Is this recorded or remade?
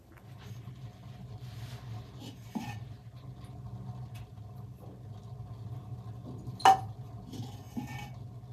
recorded